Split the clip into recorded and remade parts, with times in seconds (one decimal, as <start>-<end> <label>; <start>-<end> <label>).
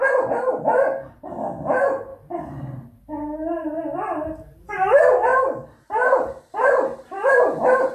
0.0-2.1 recorded; 2.1-3.8 remade; 3.8-5.3 recorded; 5.3-7.9 remade